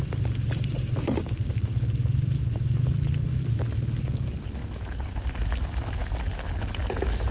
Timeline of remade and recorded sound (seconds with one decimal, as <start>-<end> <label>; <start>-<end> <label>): 0.0-7.3 recorded